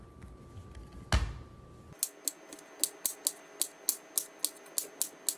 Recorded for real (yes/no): yes